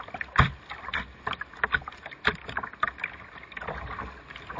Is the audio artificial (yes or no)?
no